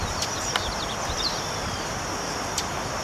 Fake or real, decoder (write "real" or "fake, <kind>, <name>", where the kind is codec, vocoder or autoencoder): real